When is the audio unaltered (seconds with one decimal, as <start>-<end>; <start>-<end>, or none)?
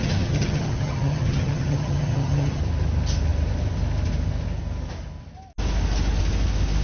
2.6-6.8